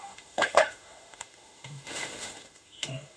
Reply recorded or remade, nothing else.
remade